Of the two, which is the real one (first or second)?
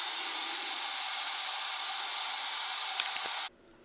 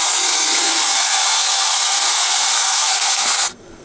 first